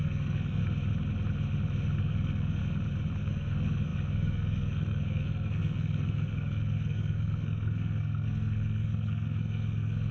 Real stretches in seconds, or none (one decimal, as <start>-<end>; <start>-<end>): 0.6-2.0; 2.6-3.2

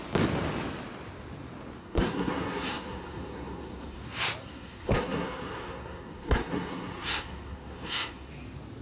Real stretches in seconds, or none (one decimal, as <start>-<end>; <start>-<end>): 0.0-1.8; 4.0-4.4; 8.3-8.8

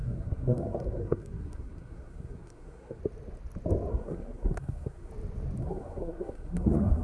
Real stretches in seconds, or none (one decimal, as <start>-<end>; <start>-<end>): 3.0-3.9; 5.1-5.6

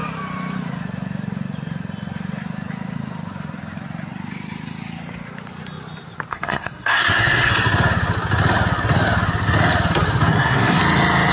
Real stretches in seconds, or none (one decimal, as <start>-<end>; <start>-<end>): 0.0-6.3; 7.5-10.3; 10.8-11.3

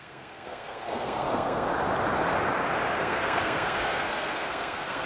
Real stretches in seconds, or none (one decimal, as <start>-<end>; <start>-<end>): 1.7-3.0

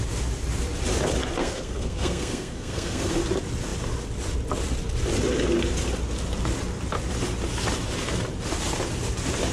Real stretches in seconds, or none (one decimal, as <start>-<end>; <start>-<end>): 0.0-1.4; 3.1-9.5

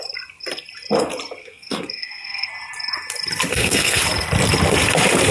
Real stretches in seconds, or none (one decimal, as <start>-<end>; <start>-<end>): 0.0-1.4; 2.5-3.5; 4.0-5.3